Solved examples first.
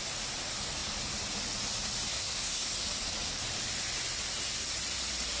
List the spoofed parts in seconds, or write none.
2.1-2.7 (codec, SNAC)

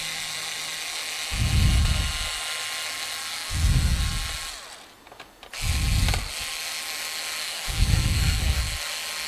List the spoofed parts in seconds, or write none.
3.3-4.0 (codec, SNAC); 7.4-8.6

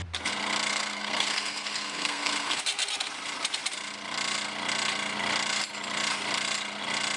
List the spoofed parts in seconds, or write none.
0.7-2.6 (codec, SNAC)